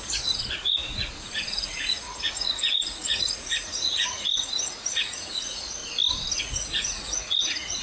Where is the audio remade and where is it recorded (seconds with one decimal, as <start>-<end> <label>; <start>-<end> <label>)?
0.0-5.8 remade; 5.8-6.4 recorded; 6.4-7.8 remade